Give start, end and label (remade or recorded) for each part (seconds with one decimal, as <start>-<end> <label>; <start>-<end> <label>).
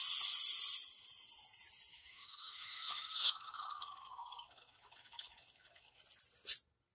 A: 0.0-1.9 recorded; 1.9-6.0 remade; 6.0-6.9 recorded